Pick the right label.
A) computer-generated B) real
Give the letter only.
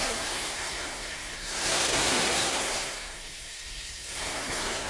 A